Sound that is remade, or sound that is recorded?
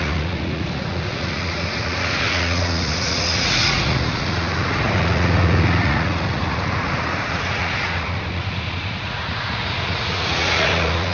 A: remade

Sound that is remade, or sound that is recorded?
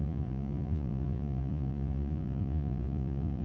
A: remade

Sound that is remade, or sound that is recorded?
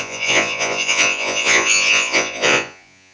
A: remade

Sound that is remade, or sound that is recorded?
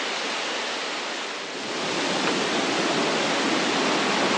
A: recorded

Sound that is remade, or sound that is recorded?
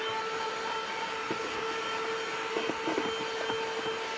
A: recorded